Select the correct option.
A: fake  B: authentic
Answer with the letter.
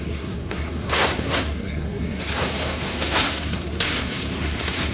A